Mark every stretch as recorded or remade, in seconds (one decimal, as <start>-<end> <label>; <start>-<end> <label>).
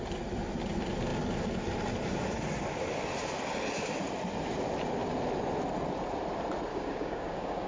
0.0-6.7 recorded; 6.7-7.7 remade